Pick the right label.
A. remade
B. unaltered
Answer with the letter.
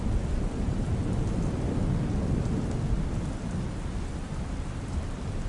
B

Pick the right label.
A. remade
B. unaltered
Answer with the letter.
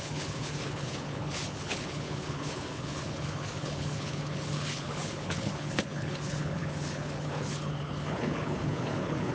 A